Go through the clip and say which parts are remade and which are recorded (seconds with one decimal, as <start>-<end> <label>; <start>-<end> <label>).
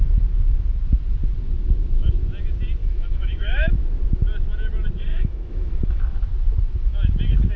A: 0.0-2.8 recorded; 2.8-3.7 remade; 3.7-5.1 recorded; 5.1-6.0 remade; 6.0-7.6 recorded